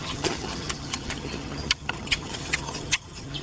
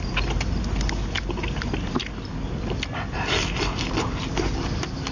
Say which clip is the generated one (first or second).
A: first